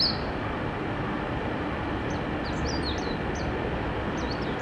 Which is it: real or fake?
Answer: real